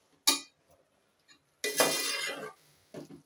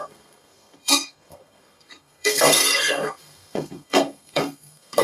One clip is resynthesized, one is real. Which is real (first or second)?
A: first